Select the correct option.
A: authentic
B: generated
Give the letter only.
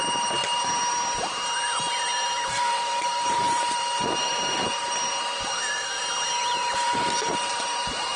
B